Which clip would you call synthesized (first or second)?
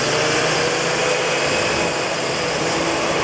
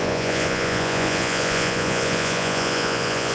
second